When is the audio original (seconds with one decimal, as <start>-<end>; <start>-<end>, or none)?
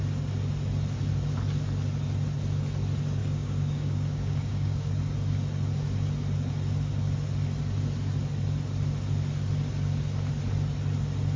0.0-3.2; 4.9-11.4